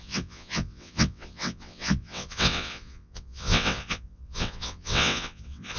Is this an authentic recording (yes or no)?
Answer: no